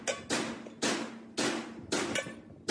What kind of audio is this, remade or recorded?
recorded